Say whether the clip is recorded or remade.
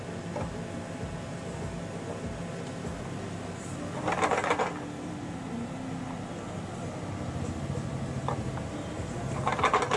recorded